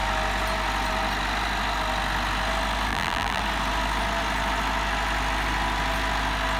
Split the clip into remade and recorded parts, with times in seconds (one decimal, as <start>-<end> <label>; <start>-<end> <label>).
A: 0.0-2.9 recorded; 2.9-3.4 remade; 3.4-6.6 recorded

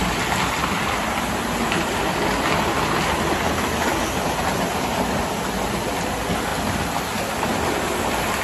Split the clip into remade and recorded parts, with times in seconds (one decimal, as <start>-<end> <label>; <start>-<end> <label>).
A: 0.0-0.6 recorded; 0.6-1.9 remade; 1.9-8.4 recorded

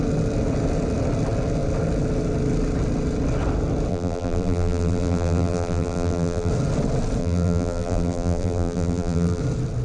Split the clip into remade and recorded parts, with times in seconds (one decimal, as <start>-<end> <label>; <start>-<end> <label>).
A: 0.0-3.9 recorded; 3.9-6.5 remade; 6.5-7.2 recorded; 7.2-9.4 remade; 9.4-9.8 recorded

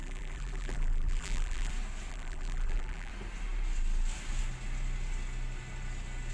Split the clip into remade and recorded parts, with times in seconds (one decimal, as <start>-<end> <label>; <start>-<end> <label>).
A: 0.0-1.7 remade; 1.7-2.1 recorded; 2.1-3.1 remade; 3.1-6.3 recorded

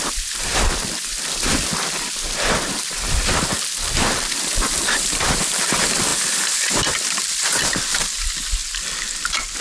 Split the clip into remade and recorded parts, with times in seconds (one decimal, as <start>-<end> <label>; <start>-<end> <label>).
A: 0.0-8.6 remade; 8.6-9.6 recorded

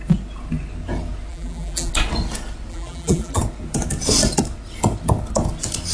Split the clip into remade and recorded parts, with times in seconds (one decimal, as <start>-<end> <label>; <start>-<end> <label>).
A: 0.0-1.3 recorded; 1.3-1.9 remade; 1.9-2.7 recorded; 2.7-3.4 remade; 3.4-5.9 recorded

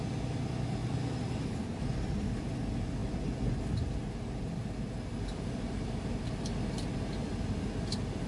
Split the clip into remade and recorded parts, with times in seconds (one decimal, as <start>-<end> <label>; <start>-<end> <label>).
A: 0.0-8.3 recorded